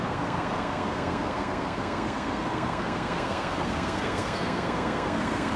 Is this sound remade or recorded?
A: remade